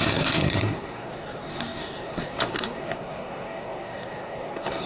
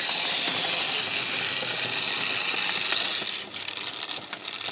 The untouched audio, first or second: second